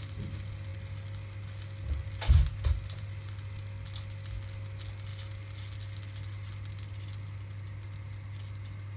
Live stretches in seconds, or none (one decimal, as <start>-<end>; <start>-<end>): 0.0-9.0